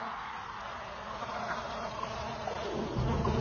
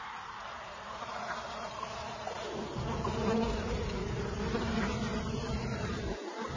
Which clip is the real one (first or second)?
first